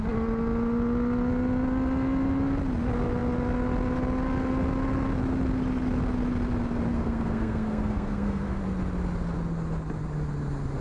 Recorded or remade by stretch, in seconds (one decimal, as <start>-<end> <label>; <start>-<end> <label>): 0.0-6.9 recorded; 6.9-8.6 remade; 8.6-10.8 recorded